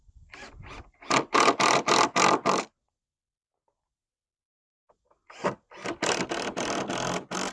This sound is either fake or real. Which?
real